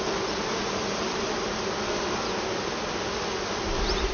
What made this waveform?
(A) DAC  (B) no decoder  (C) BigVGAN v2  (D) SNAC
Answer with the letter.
B